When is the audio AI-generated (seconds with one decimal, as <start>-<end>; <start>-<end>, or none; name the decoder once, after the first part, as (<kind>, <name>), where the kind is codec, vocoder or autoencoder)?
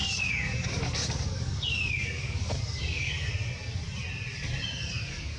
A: 0.0-3.3 (codec, DAC); 4.9-5.4